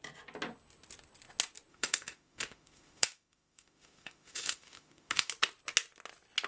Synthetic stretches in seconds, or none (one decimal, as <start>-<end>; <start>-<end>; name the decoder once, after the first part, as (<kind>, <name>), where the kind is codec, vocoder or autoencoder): 1.7-5.3 (autoencoder, DAC-VAE)